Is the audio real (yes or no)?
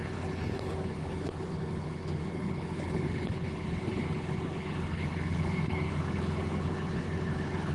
no